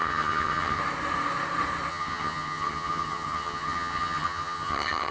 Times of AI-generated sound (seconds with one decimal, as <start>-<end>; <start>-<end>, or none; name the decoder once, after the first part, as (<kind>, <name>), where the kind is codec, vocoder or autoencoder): 0.0-0.8 (vocoder, HiFi-GAN); 1.9-5.1